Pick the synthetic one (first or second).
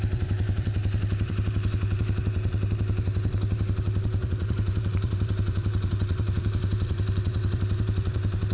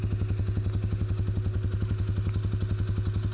first